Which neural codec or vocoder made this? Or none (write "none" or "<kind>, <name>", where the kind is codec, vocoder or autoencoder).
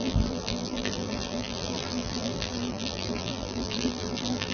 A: vocoder, BigVGAN v2